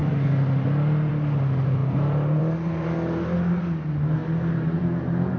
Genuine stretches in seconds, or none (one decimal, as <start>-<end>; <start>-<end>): 0.0-5.4